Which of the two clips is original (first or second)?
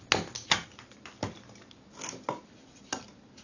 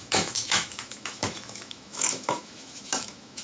first